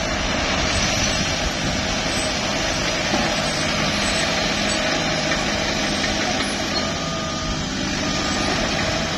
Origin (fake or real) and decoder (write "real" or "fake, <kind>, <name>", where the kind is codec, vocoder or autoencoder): real